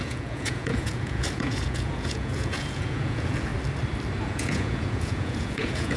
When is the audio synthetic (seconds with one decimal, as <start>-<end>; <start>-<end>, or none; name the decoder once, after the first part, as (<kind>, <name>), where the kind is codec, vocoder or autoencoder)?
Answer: 0.0-3.5 (vocoder, Vocos); 4.2-6.0